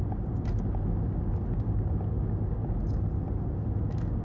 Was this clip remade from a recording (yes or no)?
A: no